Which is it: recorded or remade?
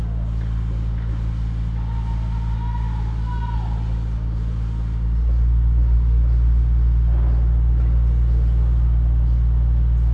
recorded